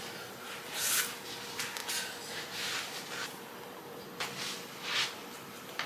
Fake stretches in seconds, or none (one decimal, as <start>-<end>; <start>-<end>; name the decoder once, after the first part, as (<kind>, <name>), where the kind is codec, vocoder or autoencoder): none